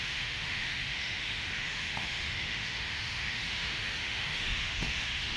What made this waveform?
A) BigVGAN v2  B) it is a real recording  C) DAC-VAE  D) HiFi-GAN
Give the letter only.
C